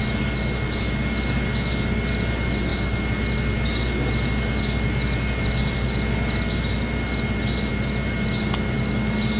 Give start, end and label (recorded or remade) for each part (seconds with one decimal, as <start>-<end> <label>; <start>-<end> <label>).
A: 0.0-9.4 recorded